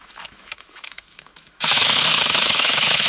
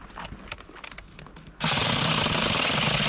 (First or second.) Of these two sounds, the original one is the second